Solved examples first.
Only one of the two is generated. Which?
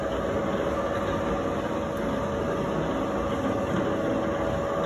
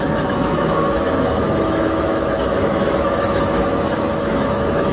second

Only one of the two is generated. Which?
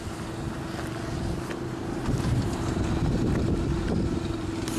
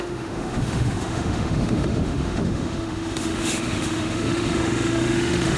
second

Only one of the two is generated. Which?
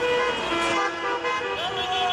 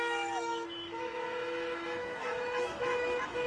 second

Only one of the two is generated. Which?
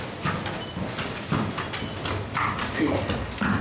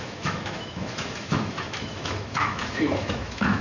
second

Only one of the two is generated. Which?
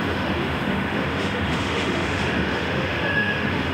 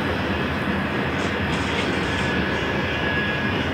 first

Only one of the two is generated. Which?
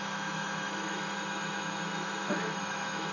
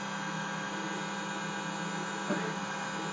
first